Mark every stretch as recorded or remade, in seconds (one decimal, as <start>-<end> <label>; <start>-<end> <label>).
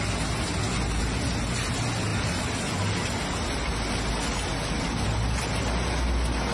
0.0-6.5 recorded